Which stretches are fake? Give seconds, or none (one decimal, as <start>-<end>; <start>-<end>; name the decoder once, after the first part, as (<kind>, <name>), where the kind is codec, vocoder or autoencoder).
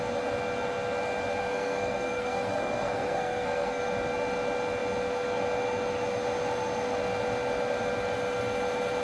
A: 1.4-3.8 (codec, SNAC)